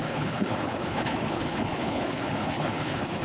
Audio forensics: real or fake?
fake